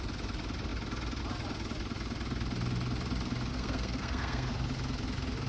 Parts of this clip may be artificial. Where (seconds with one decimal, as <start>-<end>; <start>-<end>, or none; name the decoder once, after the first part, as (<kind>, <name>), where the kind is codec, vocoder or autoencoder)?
3.5-4.5 (codec, SNAC)